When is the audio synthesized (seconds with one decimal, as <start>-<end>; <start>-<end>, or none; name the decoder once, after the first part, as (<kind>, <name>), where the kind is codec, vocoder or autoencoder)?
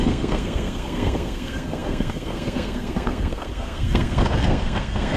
0.0-5.2 (codec, SNAC)